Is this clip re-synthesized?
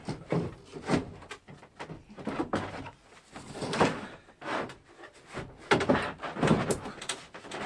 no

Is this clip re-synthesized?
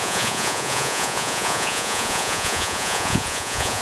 yes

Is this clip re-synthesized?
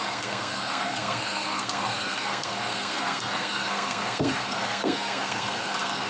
yes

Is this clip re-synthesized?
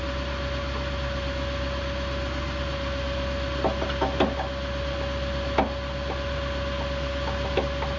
no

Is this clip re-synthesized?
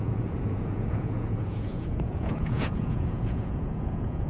yes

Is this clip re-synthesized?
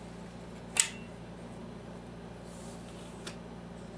no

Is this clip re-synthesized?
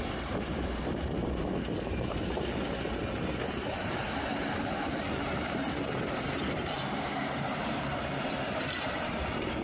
yes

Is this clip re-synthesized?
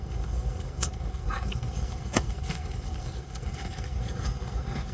yes